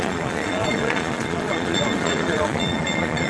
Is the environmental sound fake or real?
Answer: fake